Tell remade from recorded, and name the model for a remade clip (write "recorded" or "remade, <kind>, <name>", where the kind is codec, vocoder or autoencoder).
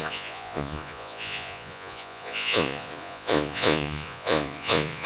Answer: remade, vocoder, Vocos